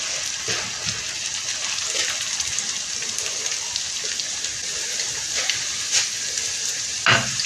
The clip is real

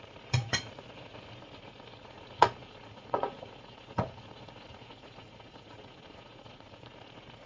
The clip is fake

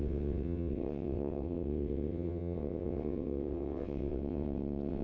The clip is fake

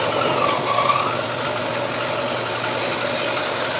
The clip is real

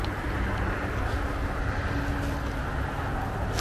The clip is real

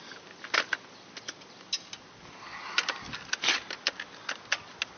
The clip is real